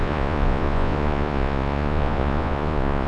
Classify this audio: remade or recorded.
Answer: remade